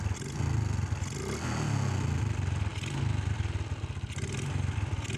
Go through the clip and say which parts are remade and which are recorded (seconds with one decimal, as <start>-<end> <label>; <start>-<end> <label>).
0.0-5.2 recorded